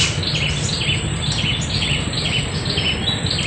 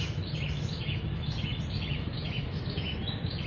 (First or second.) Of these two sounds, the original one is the first